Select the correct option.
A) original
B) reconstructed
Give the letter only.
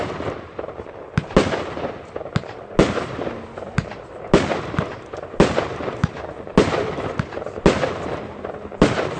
A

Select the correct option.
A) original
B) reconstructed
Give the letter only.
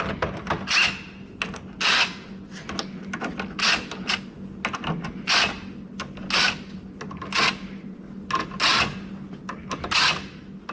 A